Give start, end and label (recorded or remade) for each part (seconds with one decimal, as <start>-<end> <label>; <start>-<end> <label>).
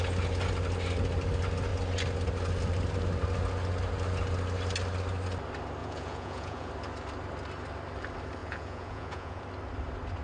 0.0-5.8 recorded; 5.8-6.7 remade; 6.7-8.4 recorded; 8.4-9.4 remade; 9.4-10.2 recorded